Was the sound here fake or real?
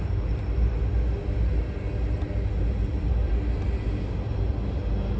real